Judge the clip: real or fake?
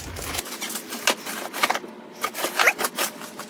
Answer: real